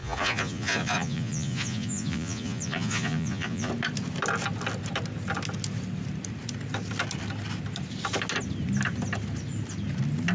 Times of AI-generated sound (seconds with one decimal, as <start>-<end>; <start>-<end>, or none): 0.0-3.7